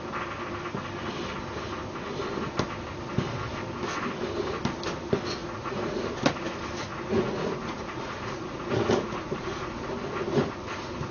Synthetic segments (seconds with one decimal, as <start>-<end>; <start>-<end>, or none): 5.4-6.0; 6.9-9.7

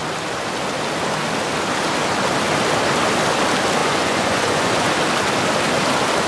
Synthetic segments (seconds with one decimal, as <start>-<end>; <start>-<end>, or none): 3.8-4.9

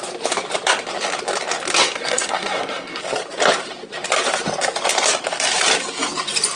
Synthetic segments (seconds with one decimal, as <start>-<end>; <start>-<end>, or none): 1.8-3.0

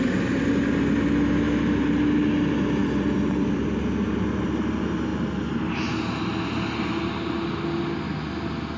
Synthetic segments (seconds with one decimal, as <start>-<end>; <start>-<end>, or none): 2.8-3.6

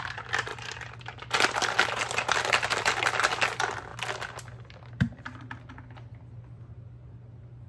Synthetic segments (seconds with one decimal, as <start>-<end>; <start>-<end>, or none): none